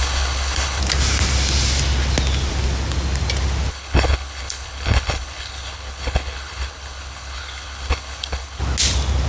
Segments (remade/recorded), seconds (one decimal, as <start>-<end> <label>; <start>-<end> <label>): 0.0-0.8 remade; 0.8-3.7 recorded; 3.7-8.6 remade; 8.6-9.3 recorded